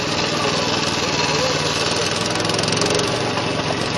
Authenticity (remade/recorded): recorded